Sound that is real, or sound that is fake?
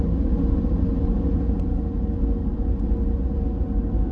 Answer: real